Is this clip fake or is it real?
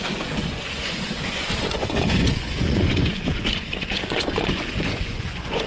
fake